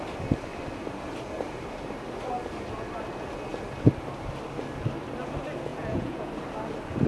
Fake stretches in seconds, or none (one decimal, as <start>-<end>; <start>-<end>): 5.7-6.3